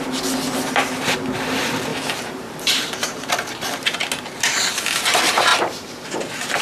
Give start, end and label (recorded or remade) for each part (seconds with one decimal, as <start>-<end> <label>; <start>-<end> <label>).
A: 0.0-1.9 recorded; 1.9-3.3 remade; 3.3-5.5 recorded; 5.5-6.1 remade; 6.1-6.6 recorded